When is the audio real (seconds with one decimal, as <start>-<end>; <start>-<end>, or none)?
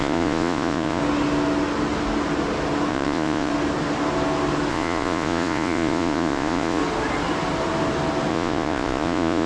1.0-2.9; 3.5-4.7; 6.8-8.3